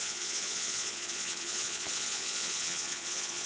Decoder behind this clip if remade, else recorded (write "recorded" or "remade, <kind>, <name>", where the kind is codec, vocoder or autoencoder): remade, vocoder, Vocos